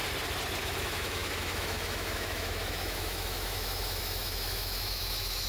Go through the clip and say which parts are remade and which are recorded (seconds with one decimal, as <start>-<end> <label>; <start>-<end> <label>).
0.0-0.6 recorded; 0.6-5.5 remade